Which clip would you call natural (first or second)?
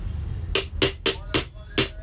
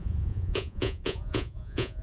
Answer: first